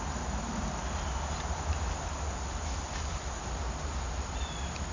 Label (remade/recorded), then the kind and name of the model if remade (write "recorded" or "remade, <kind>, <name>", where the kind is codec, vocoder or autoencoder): recorded